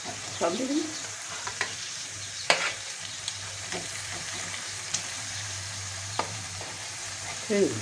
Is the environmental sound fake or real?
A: fake